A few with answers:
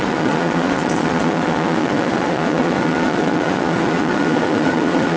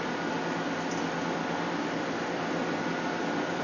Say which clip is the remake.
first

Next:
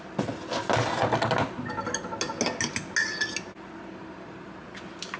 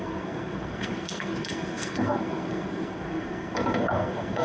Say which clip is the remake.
second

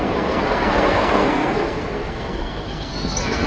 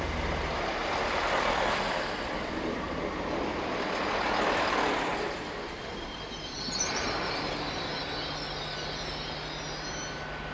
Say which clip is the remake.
first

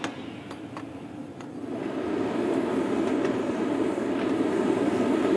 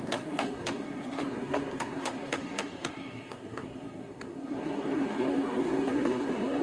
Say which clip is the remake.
second